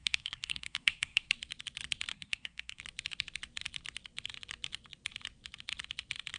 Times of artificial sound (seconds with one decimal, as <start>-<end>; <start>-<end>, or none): 0.0-1.3; 2.1-2.8